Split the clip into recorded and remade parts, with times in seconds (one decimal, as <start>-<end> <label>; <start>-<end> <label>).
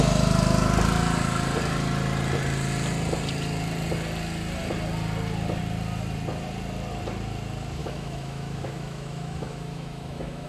0.0-7.8 recorded; 7.8-10.5 remade